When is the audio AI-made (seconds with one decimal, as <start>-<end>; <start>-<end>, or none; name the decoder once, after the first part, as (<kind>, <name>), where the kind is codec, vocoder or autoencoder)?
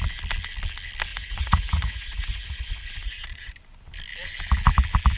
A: 1.1-3.5 (vocoder, Vocos)